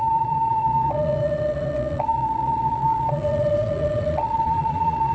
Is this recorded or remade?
remade